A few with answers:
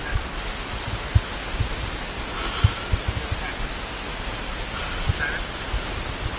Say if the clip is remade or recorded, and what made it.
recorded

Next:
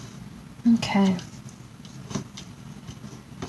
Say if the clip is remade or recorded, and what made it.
recorded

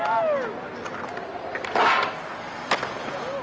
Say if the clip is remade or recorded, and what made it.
recorded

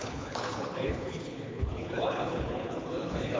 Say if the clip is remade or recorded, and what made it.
remade, codec, HILCodec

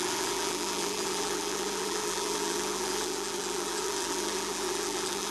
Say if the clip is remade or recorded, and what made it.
remade, vocoder, BigVGAN v2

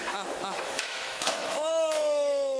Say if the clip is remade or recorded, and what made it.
remade, autoencoder, DAC-VAE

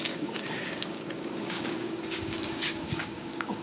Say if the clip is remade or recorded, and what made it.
remade, codec, DAC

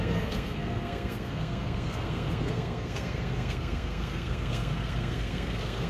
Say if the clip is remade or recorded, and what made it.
remade, codec, SNAC